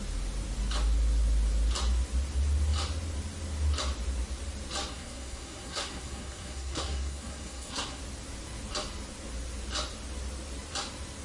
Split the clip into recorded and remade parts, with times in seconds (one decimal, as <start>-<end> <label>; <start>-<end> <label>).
0.0-4.9 recorded; 4.9-8.0 remade; 8.0-11.2 recorded